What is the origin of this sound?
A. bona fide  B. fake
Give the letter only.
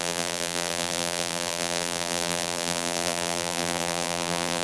B